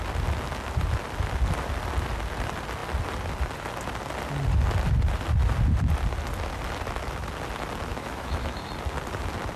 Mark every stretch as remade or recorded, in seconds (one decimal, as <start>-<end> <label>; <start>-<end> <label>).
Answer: 0.0-7.9 recorded; 7.9-8.7 remade; 8.7-9.6 recorded